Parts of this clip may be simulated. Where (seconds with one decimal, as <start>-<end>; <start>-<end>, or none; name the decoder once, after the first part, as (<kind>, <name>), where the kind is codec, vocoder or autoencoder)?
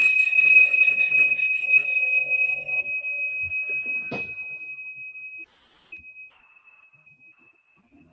0.0-2.8 (codec, SNAC)